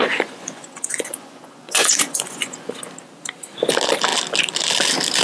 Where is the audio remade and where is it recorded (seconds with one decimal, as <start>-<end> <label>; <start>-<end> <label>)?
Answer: 0.0-2.7 remade; 2.7-5.2 recorded